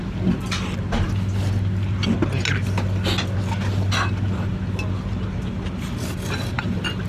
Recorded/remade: recorded